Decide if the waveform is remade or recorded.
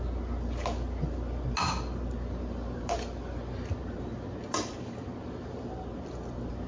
recorded